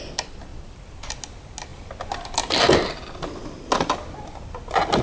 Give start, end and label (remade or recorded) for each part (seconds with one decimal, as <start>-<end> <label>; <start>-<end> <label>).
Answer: 0.0-0.5 recorded; 0.5-1.1 remade; 1.1-1.7 recorded; 1.7-2.6 remade; 2.6-5.0 recorded